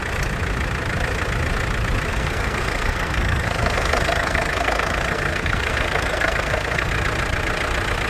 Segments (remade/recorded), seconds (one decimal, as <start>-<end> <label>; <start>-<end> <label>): 0.0-2.1 recorded; 2.1-6.9 remade; 6.9-8.1 recorded